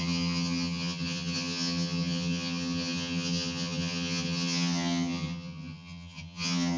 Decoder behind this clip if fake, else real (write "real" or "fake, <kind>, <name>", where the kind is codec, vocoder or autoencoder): fake, vocoder, HiFi-GAN